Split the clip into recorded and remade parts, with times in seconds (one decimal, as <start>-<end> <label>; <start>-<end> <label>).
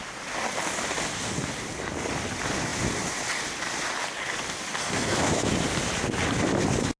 0.0-4.8 recorded; 4.8-5.5 remade; 5.5-7.0 recorded